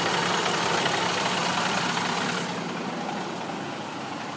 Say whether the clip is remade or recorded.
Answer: recorded